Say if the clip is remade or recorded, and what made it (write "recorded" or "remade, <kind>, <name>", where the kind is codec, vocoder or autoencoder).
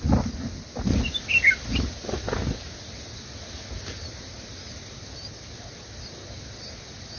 recorded